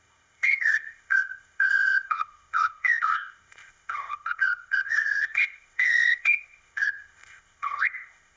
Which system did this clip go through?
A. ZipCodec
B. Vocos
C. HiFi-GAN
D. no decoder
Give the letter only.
A